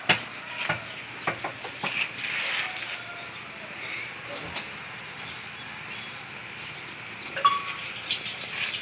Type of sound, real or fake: real